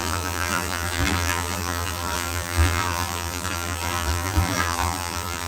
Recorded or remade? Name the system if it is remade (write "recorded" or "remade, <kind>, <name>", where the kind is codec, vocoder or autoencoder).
remade, vocoder, BigVGAN v2